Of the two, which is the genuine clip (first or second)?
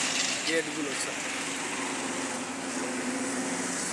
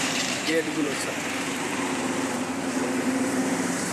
first